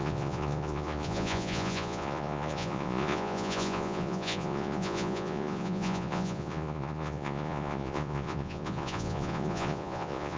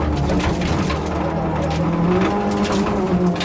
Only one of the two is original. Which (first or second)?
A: second